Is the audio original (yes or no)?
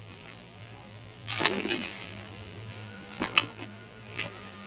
no